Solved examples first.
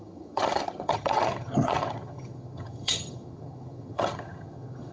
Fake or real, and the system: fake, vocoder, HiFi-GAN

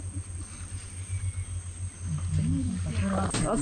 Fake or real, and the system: real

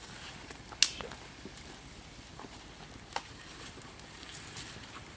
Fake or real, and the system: real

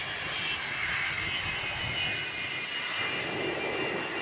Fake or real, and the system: real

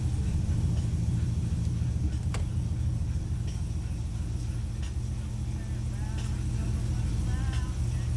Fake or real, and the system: real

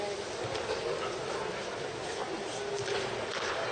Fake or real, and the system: real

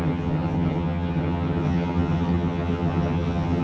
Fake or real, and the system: fake, vocoder, HiFi-GAN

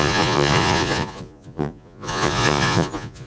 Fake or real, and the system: fake, vocoder, Vocos